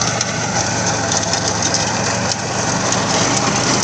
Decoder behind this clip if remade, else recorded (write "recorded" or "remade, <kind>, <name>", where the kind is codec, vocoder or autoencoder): recorded